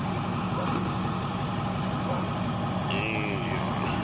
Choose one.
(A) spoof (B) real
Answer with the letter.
B